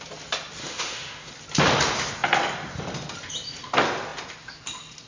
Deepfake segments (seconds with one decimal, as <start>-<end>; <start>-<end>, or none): 0.6-1.3